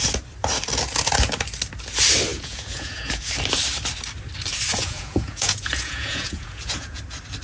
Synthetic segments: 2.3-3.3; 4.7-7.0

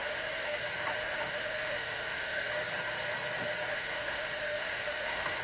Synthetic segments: 0.0-0.6; 1.0-2.5; 3.7-5.4